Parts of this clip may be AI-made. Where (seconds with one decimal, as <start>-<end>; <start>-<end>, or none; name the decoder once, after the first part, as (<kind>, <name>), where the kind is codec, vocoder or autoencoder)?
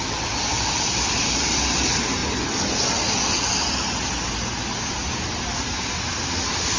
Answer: none